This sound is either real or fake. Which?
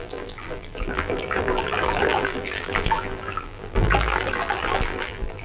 fake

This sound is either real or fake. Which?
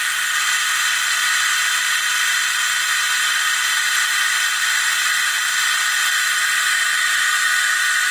real